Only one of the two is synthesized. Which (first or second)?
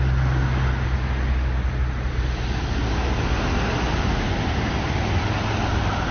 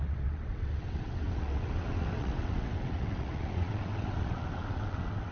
second